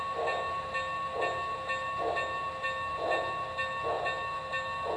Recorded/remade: recorded